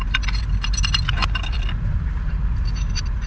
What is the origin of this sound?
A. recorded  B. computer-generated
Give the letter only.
A